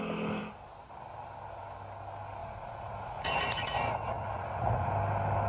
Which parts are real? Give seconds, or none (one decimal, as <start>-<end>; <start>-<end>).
0.0-2.4; 4.9-5.5